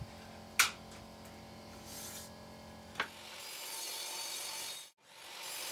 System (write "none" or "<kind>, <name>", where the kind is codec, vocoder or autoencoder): none